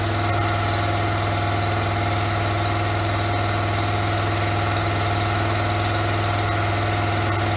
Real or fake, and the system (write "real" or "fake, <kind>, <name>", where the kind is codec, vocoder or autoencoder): real